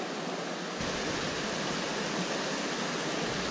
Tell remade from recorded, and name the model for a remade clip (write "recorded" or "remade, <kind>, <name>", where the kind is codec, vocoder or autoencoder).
recorded